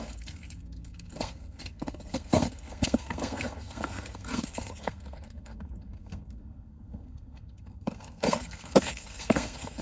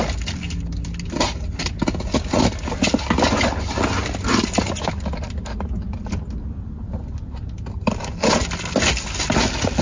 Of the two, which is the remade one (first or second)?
first